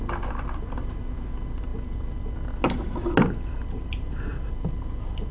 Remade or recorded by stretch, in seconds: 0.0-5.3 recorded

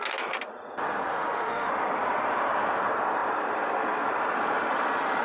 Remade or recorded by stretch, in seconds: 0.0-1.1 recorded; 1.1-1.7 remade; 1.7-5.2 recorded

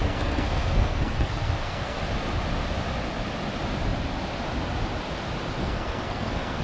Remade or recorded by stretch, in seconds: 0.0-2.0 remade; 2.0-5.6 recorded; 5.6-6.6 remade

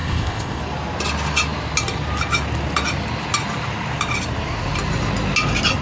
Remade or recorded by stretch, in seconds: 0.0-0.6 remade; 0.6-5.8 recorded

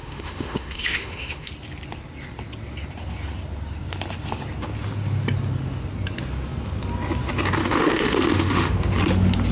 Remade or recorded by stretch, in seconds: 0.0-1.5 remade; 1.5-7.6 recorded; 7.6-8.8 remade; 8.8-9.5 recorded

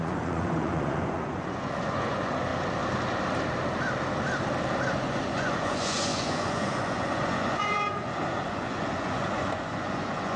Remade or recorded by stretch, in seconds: 0.0-2.5 remade; 2.5-4.9 recorded; 4.9-10.4 remade

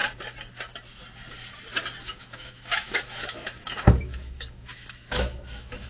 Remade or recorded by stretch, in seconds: 0.0-2.0 recorded; 2.0-5.9 remade

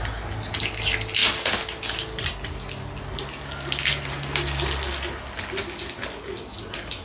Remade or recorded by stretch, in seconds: 0.0-7.0 recorded